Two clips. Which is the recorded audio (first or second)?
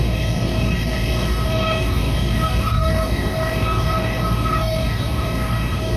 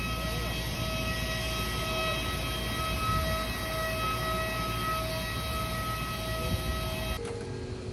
second